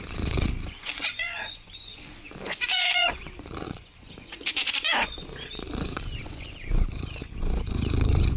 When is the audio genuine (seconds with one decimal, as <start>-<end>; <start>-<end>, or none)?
none